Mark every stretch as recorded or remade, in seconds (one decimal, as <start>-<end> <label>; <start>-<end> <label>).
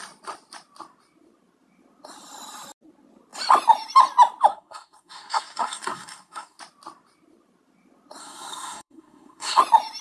0.0-4.5 recorded; 4.5-6.6 remade; 6.6-8.2 recorded; 8.2-9.6 remade; 9.6-10.0 recorded